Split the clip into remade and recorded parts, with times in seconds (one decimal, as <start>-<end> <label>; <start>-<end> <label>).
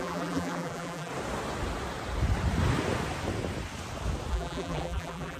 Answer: 0.0-1.1 remade; 1.1-4.3 recorded; 4.3-5.4 remade